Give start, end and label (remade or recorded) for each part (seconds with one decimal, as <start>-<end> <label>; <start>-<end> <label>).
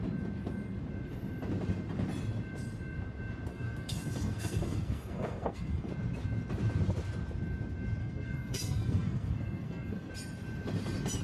0.0-3.5 recorded; 3.5-5.9 remade; 5.9-8.0 recorded; 8.0-10.1 remade; 10.1-11.2 recorded